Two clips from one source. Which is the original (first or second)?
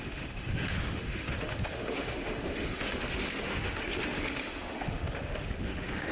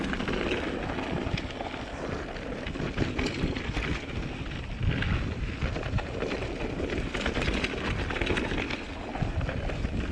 second